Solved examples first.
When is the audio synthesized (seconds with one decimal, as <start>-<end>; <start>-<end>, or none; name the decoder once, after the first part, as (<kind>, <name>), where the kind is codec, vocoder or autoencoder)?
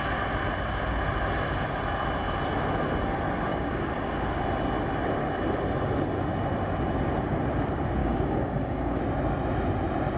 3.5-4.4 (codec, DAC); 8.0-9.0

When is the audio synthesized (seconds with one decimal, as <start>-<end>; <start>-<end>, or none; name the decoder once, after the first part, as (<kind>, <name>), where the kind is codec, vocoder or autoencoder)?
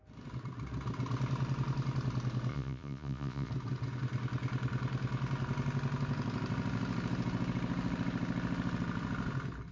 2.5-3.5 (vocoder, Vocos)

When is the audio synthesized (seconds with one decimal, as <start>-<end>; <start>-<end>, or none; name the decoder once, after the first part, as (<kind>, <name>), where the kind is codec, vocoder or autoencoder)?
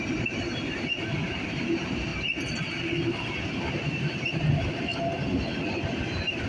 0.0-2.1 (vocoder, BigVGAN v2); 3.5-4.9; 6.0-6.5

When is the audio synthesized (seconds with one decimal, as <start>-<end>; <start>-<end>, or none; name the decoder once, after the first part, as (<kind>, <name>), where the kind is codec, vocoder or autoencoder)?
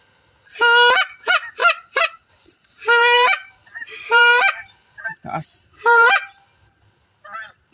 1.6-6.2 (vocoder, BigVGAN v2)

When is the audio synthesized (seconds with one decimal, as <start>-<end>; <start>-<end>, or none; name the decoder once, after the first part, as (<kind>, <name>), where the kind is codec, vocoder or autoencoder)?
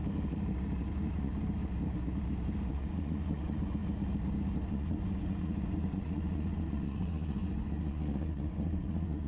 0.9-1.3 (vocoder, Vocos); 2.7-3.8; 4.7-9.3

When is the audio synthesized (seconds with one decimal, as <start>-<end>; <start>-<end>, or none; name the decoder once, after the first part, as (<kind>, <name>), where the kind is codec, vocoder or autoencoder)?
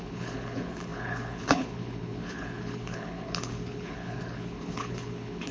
0.0-5.5 (codec, HILCodec)